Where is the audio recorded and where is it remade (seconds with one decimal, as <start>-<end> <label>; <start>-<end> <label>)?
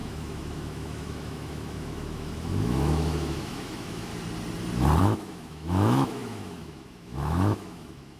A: 0.0-4.1 remade; 4.1-5.0 recorded; 5.0-8.2 remade